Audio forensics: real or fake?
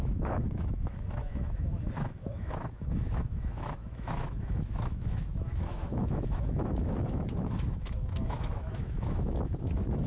fake